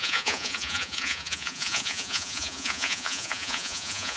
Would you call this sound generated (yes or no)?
yes